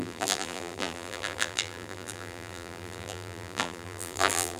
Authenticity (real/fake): fake